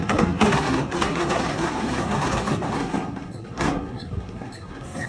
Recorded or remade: remade